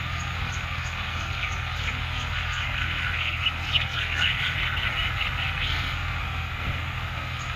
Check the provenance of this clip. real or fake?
fake